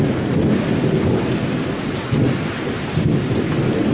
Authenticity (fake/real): real